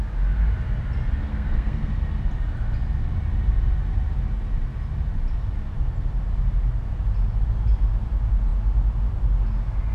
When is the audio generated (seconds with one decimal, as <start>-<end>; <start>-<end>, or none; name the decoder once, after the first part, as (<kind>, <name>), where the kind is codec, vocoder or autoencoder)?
1.3-1.9 (codec, SNAC)